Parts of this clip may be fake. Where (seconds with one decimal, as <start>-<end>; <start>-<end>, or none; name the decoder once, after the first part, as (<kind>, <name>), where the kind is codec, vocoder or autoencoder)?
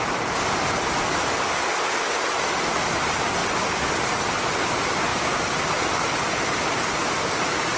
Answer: none